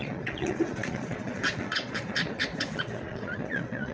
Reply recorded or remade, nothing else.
remade